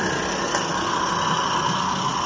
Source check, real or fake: real